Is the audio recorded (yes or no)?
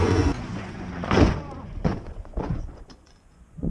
no